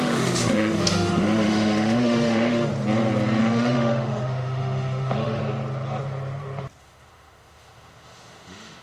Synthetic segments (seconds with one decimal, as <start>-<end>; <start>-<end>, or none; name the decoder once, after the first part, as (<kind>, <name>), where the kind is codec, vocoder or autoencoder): 0.0-2.7 (autoencoder, DAC-VAE); 3.4-5.4; 6.8-8.8